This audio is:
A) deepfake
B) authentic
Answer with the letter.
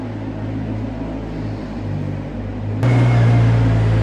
B